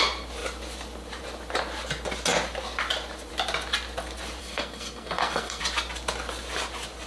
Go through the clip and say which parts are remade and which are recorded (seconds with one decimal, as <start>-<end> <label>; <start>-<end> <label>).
0.0-4.4 recorded; 4.4-5.6 remade; 5.6-7.1 recorded

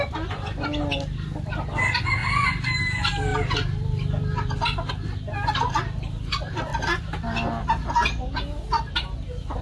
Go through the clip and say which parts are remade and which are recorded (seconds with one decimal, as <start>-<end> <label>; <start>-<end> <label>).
0.0-9.6 recorded

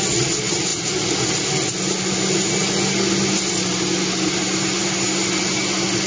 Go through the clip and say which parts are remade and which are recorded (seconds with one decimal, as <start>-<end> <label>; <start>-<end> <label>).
0.0-6.1 recorded

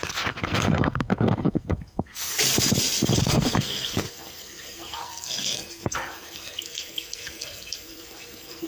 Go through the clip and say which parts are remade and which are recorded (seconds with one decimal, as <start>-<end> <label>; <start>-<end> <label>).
0.0-2.3 remade; 2.3-3.2 recorded; 3.2-8.7 remade

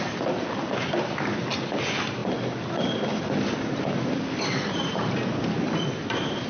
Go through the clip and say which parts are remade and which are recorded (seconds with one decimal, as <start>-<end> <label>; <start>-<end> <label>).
0.0-6.5 recorded